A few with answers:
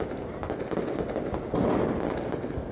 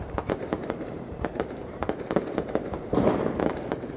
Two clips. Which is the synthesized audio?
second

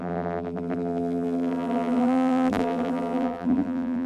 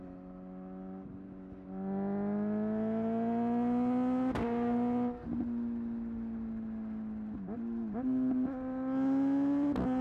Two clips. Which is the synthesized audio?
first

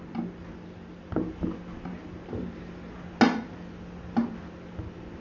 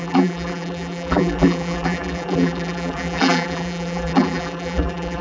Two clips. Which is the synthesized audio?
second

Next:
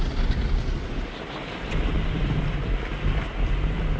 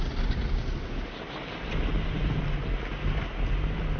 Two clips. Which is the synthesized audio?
first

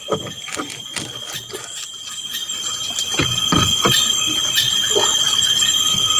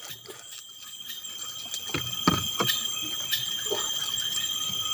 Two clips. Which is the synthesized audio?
second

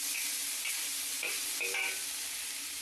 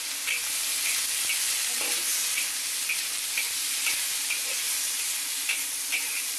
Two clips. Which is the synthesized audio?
first